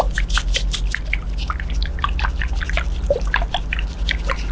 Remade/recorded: recorded